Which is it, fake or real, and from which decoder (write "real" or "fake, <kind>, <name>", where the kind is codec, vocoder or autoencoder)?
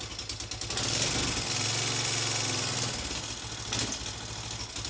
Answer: real